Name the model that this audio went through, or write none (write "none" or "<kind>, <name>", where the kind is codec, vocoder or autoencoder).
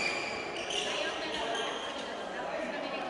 none